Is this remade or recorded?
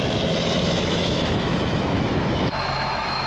remade